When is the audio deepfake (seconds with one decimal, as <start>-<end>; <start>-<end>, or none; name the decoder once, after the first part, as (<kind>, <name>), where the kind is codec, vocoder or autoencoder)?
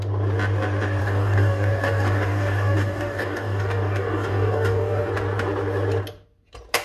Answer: 1.0-5.1 (codec, DAC)